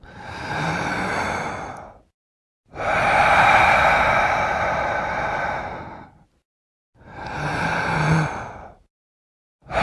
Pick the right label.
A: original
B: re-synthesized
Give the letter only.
A